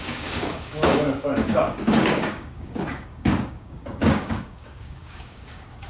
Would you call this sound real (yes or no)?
no